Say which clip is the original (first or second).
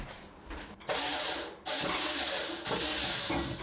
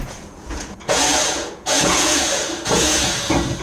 first